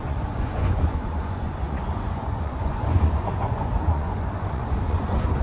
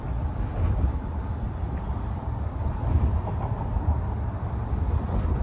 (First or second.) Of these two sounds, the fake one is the first